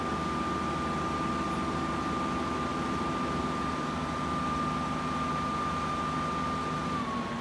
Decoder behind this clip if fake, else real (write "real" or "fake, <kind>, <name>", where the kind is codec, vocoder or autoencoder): real